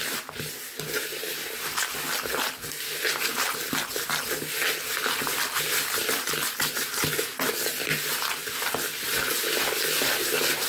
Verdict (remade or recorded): recorded